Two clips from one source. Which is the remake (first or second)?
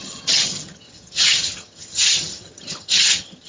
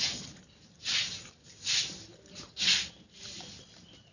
first